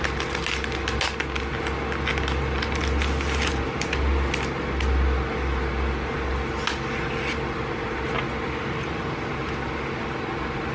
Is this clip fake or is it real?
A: real